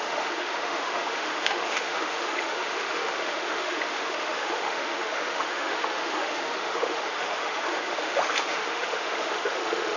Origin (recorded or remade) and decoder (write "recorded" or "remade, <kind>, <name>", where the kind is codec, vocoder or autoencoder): remade, autoencoder, DAC-VAE